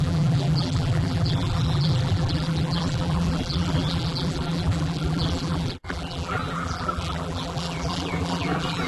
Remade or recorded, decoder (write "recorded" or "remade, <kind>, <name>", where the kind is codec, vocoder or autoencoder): remade, vocoder, BigVGAN v2